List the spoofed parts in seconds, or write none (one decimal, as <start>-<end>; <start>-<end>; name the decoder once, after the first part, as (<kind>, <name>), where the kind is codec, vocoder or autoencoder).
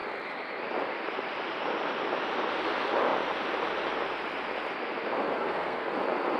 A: 5.3-5.9 (codec, SNAC)